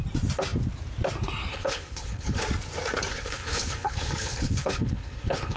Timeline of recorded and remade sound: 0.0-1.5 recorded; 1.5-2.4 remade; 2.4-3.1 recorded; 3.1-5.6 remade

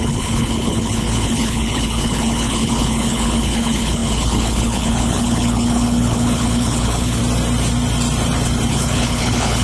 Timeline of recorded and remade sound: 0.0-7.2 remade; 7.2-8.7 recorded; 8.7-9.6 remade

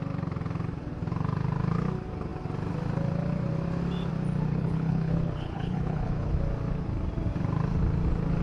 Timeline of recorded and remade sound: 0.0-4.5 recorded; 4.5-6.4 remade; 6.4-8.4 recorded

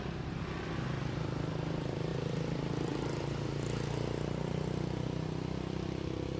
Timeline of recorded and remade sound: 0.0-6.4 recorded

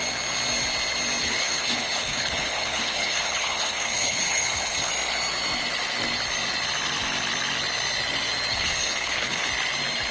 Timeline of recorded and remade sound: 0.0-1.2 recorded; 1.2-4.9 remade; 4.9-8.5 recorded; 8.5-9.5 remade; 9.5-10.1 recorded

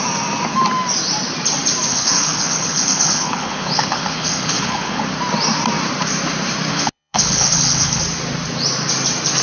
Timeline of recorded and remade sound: 0.0-1.9 recorded; 1.9-5.0 remade; 5.0-6.7 recorded; 6.7-8.0 remade; 8.0-9.4 recorded